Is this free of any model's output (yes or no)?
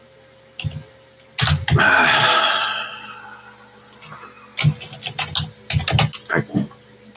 yes